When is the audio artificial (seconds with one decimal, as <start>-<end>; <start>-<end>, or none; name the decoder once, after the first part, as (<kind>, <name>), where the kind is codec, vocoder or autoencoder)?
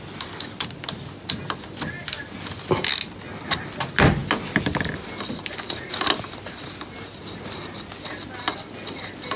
none